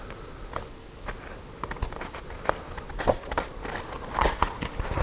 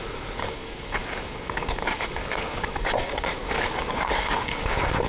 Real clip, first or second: first